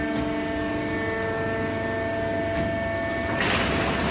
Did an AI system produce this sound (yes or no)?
no